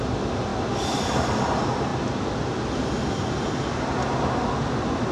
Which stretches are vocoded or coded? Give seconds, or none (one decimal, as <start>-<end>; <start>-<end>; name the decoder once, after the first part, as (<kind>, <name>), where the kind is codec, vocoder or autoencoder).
none